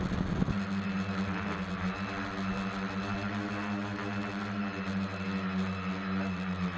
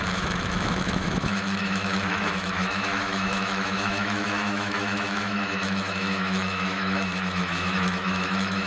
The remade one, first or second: second